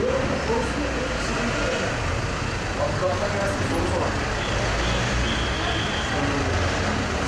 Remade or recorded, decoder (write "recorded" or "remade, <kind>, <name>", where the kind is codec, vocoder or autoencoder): recorded